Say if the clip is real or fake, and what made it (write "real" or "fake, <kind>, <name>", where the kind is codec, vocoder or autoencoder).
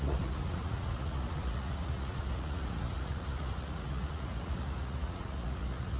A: fake, vocoder, Vocos